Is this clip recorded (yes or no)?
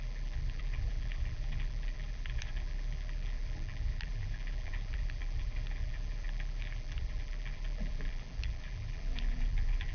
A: no